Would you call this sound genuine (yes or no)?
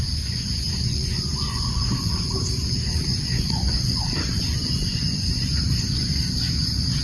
no